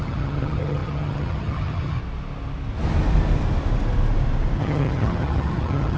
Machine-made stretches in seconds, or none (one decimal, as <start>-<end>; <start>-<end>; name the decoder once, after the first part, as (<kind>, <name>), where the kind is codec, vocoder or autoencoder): 0.0-2.0 (vocoder, HiFi-GAN); 4.6-6.0